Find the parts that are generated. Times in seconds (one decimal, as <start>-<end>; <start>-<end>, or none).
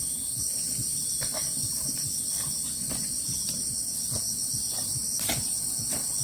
none